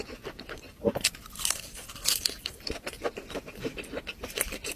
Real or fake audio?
fake